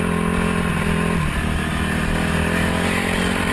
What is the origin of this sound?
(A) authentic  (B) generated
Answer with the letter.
A